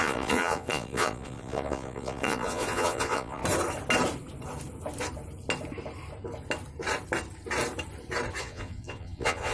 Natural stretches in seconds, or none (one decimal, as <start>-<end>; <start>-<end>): 3.4-8.4